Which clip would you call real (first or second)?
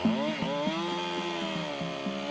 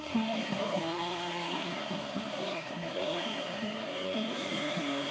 first